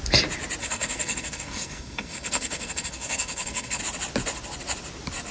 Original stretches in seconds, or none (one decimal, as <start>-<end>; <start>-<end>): 0.0-0.6; 3.8-5.3

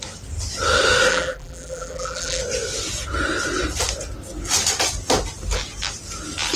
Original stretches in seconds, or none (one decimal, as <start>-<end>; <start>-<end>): 0.0-1.1; 2.4-6.6

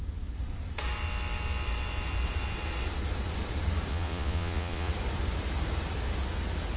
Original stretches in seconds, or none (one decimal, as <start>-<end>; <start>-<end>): 0.0-3.9; 4.9-6.8

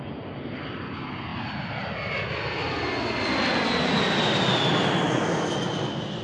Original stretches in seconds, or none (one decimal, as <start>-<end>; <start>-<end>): 0.0-6.2

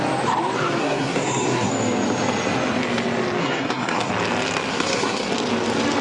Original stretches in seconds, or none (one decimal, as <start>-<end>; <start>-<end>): 0.0-0.8; 1.7-3.4; 4.1-4.7; 5.3-6.0